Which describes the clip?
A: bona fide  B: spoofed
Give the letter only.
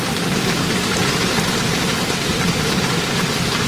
B